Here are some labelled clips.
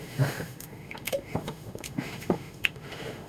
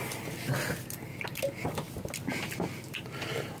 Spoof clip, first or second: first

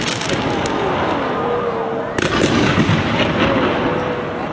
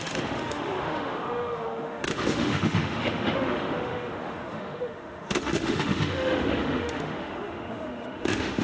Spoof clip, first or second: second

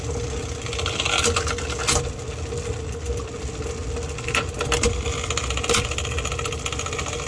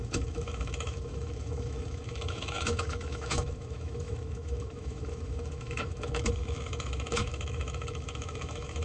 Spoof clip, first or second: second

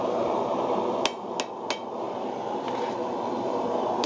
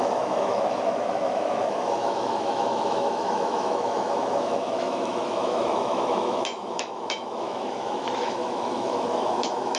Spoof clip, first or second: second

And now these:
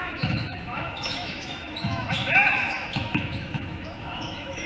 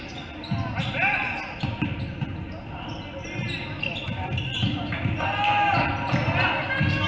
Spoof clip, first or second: first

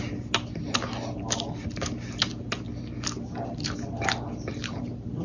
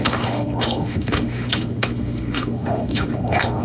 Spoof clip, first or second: second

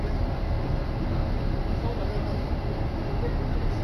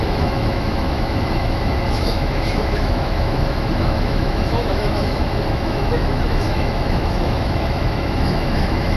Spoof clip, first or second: second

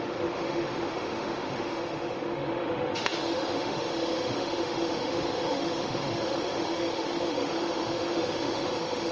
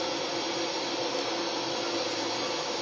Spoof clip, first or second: first